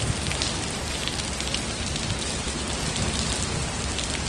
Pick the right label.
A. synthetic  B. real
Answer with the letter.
B